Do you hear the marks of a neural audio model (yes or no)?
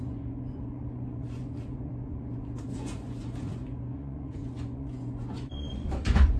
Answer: yes